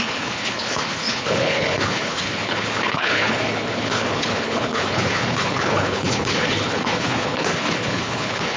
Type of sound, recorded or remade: remade